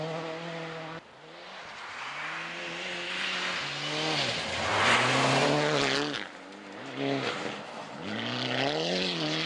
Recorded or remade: recorded